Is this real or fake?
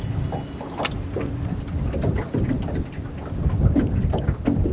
real